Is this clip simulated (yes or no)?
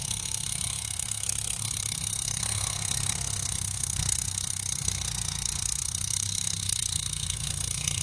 yes